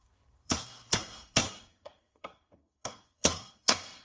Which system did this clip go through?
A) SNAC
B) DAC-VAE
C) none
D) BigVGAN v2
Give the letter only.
A